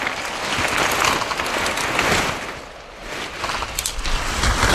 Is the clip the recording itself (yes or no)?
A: yes